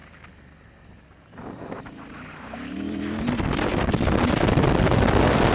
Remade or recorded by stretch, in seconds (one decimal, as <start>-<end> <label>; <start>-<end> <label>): 0.0-5.5 recorded